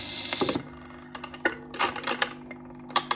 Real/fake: real